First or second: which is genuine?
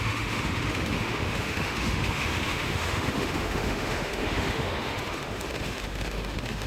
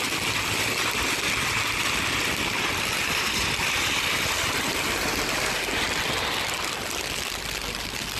second